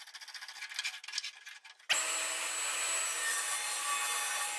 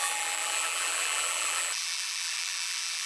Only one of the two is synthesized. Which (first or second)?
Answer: second